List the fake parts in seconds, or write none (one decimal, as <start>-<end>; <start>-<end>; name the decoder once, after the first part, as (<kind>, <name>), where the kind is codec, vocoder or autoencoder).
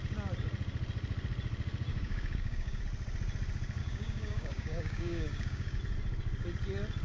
1.9-2.8 (codec, DAC); 3.8-5.8